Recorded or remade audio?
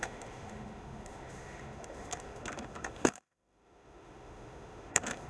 remade